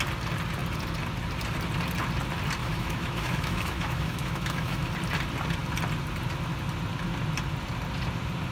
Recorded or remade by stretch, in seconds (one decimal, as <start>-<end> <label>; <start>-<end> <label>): 0.0-2.6 recorded; 2.6-4.9 remade; 4.9-8.5 recorded